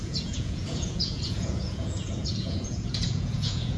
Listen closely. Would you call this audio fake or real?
fake